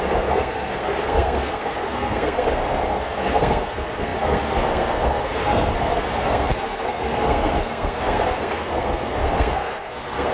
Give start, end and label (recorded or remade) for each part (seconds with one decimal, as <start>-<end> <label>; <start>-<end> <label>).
0.0-10.3 remade